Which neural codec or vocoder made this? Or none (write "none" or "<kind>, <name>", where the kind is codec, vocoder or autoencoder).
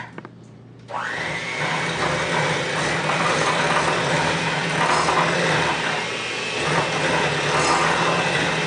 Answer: none